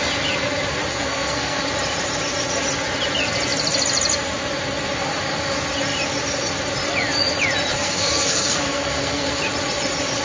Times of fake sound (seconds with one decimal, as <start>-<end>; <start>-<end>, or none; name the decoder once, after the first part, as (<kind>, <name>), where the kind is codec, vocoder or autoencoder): 0.9-1.6 (codec, SNAC); 7.7-9.4